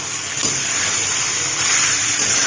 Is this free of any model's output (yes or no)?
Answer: yes